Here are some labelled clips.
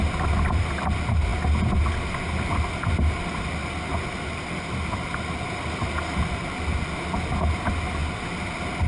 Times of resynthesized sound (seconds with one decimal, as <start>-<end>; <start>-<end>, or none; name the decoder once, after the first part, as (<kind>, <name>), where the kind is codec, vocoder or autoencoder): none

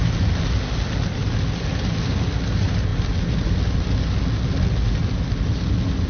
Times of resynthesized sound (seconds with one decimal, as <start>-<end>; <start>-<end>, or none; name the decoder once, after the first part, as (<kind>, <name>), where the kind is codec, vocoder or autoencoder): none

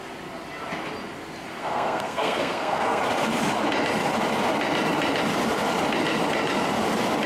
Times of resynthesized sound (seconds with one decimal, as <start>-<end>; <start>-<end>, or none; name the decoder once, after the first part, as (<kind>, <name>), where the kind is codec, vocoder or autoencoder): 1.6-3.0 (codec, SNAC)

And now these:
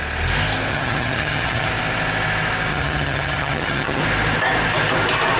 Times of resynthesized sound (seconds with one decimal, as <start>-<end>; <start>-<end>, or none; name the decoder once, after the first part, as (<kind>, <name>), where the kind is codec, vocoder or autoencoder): 0.7-1.7 (vocoder, HiFi-GAN); 2.7-4.0

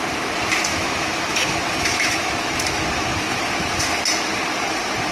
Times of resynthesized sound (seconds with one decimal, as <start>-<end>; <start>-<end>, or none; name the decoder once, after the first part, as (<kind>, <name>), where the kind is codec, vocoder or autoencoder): 0.7-3.8 (autoencoder, DAC-VAE)

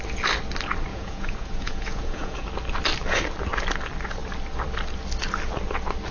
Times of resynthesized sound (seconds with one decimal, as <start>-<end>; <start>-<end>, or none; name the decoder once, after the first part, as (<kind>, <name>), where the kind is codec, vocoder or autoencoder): 0.9-2.5 (vocoder, Vocos)

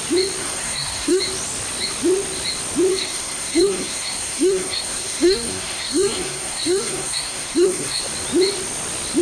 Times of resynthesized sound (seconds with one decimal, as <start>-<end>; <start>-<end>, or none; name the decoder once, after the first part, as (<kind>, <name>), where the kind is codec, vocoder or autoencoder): 0.4-1.2 (codec, SNAC); 2.9-8.0